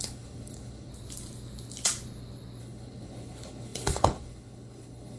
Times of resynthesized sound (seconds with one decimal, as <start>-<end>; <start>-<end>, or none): 0.0-0.9; 2.6-5.2